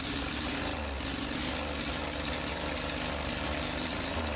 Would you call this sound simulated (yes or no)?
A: no